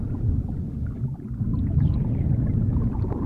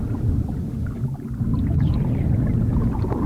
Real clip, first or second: second